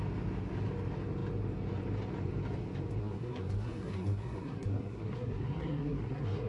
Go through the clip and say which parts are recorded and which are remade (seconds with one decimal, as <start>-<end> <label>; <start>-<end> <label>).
0.0-3.0 recorded; 3.0-6.5 remade